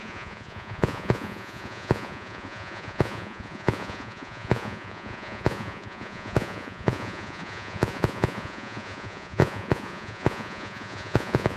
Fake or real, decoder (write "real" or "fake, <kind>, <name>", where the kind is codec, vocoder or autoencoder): fake, vocoder, Vocos